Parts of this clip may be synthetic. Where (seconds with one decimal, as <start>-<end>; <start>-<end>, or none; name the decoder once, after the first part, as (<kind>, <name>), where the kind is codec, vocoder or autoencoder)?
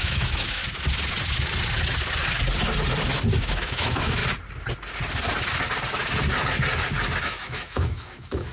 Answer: 0.0-0.6 (autoencoder, DAC-VAE); 3.4-4.2; 7.2-8.5